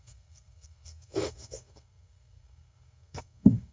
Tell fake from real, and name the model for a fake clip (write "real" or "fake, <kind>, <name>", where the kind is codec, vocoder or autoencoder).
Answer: fake, codec, SNAC